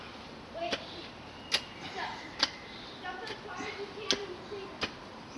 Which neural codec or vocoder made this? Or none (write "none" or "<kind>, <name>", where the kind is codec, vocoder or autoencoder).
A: none